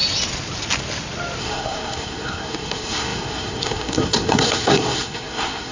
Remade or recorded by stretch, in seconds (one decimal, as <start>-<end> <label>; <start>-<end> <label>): 0.0-1.4 recorded; 1.4-5.7 remade